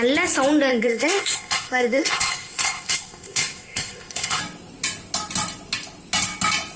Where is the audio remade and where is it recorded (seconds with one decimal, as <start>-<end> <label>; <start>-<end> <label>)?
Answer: 0.0-0.7 recorded; 0.7-4.4 remade; 4.4-6.8 recorded